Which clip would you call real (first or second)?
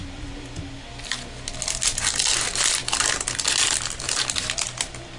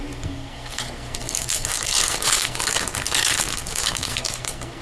first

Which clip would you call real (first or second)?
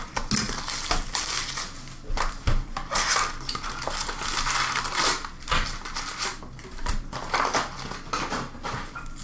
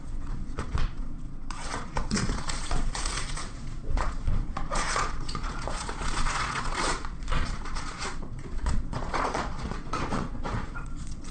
first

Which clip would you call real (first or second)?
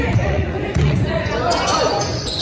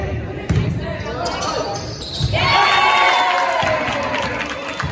second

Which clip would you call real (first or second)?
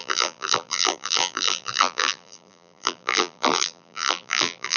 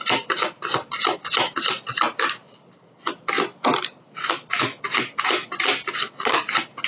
second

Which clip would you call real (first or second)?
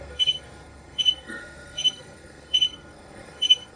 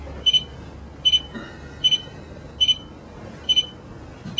second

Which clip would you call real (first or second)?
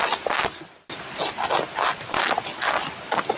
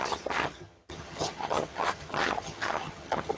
first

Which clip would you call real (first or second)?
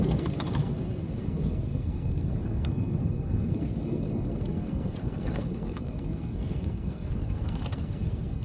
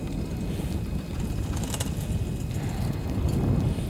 second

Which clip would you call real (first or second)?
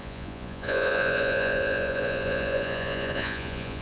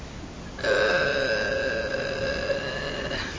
second